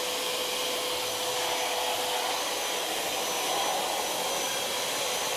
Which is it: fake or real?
real